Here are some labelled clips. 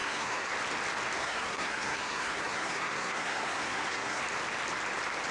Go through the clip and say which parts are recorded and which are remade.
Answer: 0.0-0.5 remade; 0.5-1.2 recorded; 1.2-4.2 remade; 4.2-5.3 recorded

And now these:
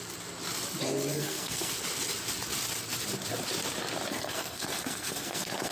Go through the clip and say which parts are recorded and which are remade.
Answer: 0.0-1.1 recorded; 1.1-1.7 remade; 1.7-4.1 recorded; 4.1-5.7 remade

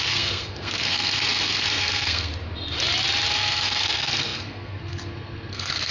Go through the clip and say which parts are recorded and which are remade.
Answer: 0.0-2.3 remade; 2.3-3.3 recorded; 3.3-5.9 remade

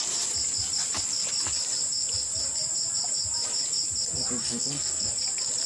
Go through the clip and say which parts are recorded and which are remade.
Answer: 0.0-4.4 recorded; 4.4-5.1 remade; 5.1-5.7 recorded

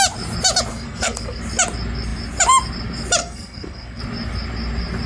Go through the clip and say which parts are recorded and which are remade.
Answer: 0.0-0.7 recorded; 0.7-1.4 remade; 1.4-3.2 recorded; 3.2-4.0 remade; 4.0-5.1 recorded

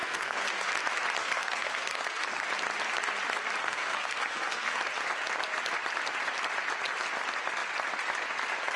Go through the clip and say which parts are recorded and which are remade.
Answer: 0.0-0.7 remade; 0.7-1.2 recorded; 1.2-2.5 remade; 2.5-3.6 recorded; 3.6-4.8 remade; 4.8-8.8 recorded

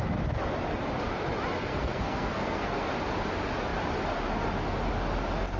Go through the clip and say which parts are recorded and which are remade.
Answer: 0.0-1.6 recorded; 1.6-2.9 remade; 2.9-5.6 recorded

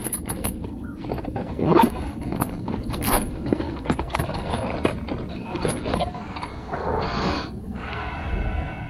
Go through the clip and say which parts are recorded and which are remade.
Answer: 0.0-4.7 remade; 4.7-5.3 recorded; 5.3-8.9 remade